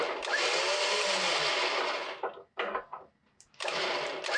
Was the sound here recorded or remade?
recorded